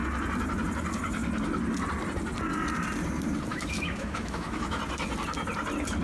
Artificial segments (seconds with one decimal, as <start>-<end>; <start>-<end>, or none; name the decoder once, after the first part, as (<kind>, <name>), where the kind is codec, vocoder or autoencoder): 3.5-4.8 (autoencoder, DAC-VAE)